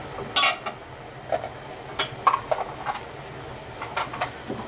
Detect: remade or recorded recorded